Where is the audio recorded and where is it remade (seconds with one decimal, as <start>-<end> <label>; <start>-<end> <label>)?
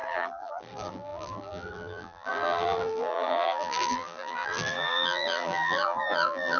0.0-6.6 remade